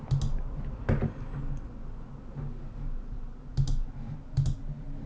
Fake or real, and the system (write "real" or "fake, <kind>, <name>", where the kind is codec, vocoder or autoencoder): real